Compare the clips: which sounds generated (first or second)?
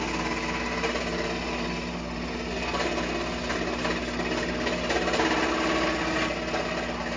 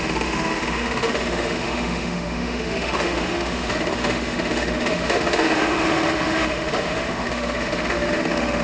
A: second